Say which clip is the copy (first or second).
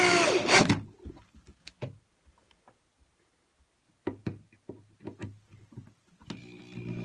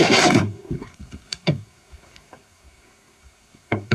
second